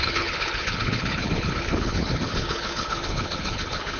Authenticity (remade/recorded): remade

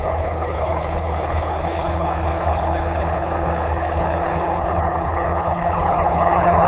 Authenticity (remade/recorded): remade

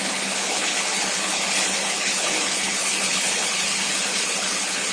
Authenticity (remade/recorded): remade